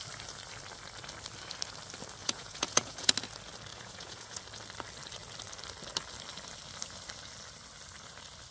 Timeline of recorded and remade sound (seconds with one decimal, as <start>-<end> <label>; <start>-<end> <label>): 0.0-2.2 recorded; 2.2-3.1 remade; 3.1-3.7 recorded; 3.7-4.4 remade; 4.4-8.5 recorded